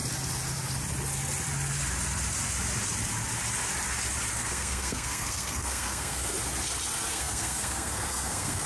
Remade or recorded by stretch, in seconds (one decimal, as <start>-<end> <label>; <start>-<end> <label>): 0.0-4.3 recorded; 4.3-6.3 remade; 6.3-7.1 recorded; 7.1-8.7 remade